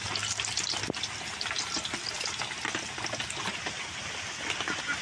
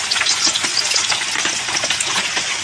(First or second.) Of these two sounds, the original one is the first